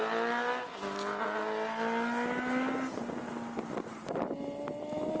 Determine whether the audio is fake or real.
real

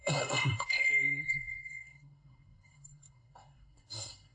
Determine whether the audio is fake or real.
fake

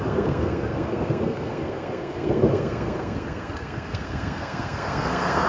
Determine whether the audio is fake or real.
fake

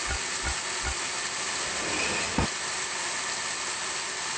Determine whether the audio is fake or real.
real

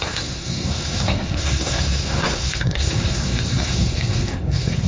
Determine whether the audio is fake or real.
fake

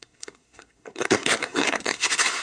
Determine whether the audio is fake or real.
fake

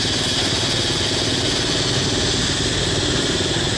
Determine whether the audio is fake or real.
real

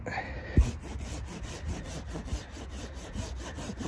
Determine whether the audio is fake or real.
real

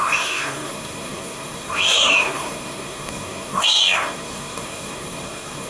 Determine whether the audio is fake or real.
fake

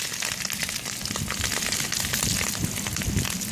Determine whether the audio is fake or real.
real